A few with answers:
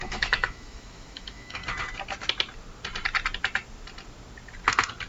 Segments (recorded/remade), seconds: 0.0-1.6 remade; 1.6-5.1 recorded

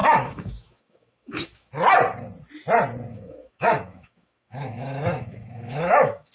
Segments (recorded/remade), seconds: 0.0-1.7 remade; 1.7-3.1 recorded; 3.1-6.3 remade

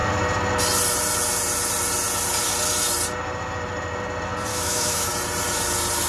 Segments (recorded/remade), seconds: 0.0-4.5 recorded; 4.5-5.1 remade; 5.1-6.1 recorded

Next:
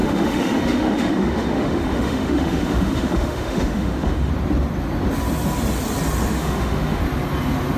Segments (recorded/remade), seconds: 0.0-4.3 remade; 4.3-6.4 recorded; 6.4-7.0 remade; 7.0-7.8 recorded

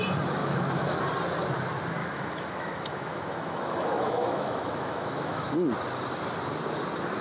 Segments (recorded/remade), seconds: 0.0-0.4 recorded; 0.4-1.0 remade; 1.0-2.0 recorded; 2.0-5.5 remade; 5.5-7.2 recorded

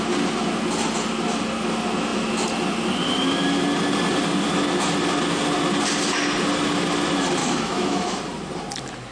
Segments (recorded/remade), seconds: 0.0-7.4 recorded; 7.4-8.2 remade; 8.2-9.1 recorded

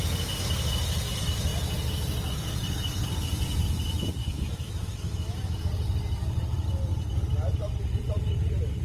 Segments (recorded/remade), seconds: 0.0-4.2 recorded; 4.2-5.7 remade; 5.7-8.8 recorded

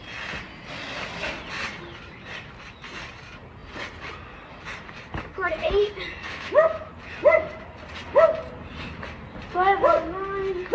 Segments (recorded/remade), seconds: 0.0-6.2 recorded; 6.2-6.9 remade; 6.9-10.7 recorded